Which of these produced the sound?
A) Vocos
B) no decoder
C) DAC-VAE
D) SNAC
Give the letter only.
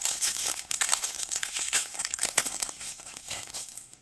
D